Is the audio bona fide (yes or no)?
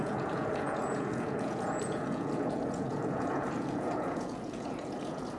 no